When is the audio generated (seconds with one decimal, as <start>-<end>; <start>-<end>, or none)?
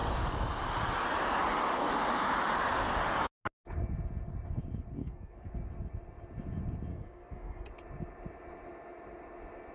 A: 5.0-5.5; 6.9-7.7